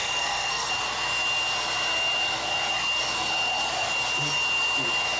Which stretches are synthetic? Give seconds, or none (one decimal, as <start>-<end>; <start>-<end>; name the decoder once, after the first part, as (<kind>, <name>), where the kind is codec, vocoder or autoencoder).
0.0-0.7 (codec, SNAC)